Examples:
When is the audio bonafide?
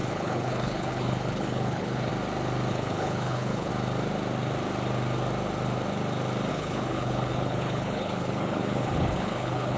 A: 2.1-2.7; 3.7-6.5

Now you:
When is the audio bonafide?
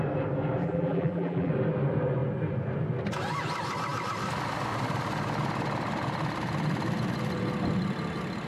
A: 0.0-0.6; 1.5-8.5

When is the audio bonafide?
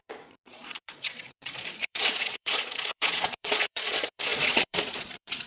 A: none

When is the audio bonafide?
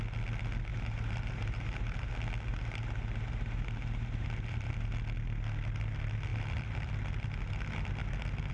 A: 0.0-0.7; 2.1-2.5; 4.9-6.3; 6.9-8.5